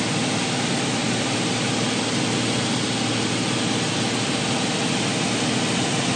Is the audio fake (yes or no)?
no